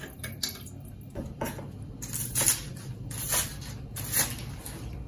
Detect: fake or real fake